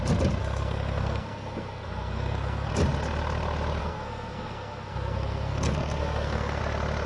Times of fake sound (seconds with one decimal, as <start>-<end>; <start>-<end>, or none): 0.4-2.7; 3.8-6.6